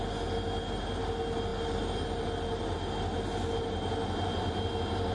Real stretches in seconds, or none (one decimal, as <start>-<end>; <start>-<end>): 0.0-5.1